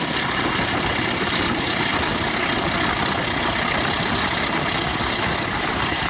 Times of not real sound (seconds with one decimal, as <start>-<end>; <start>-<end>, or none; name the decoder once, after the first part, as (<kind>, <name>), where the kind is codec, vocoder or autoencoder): 0.0-1.9 (vocoder, BigVGAN v2); 5.6-6.1